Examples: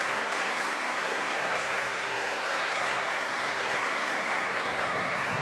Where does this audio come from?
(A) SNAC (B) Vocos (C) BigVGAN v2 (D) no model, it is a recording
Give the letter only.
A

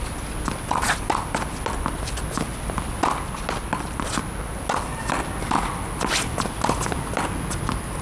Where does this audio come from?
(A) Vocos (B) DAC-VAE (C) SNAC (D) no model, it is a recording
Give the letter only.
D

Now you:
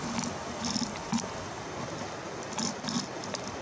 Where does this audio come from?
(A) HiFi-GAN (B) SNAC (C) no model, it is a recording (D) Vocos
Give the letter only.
C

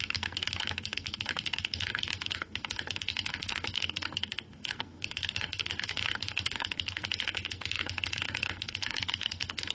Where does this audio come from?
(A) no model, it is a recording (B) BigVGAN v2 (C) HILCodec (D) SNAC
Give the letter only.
D